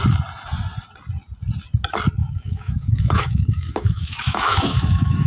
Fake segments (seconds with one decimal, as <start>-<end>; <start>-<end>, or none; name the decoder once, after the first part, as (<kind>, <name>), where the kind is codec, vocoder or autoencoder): 2.2-5.3 (autoencoder, DAC-VAE)